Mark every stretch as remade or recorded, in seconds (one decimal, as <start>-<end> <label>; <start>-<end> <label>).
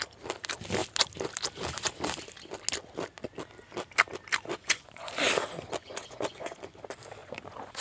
0.0-4.6 recorded; 4.6-5.1 remade; 5.1-5.8 recorded; 5.8-6.7 remade; 6.7-7.2 recorded; 7.2-7.8 remade